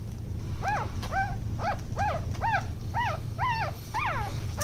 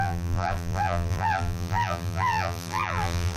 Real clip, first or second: first